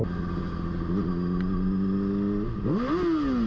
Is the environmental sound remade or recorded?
recorded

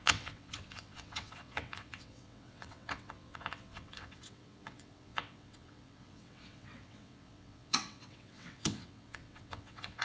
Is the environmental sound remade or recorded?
remade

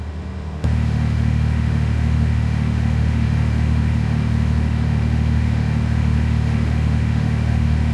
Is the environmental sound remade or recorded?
remade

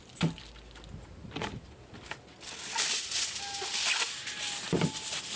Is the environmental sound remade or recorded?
recorded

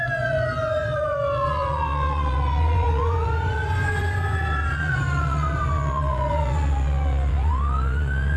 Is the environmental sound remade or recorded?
remade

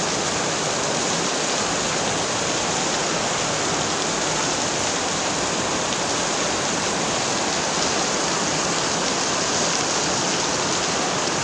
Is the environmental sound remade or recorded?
recorded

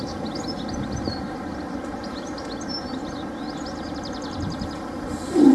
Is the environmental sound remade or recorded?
remade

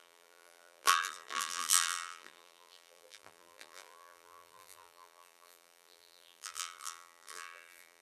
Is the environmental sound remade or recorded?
remade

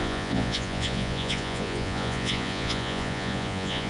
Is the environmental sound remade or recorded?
remade